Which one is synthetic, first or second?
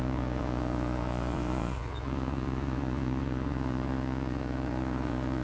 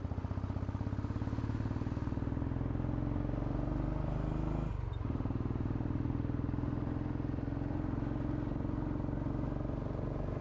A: first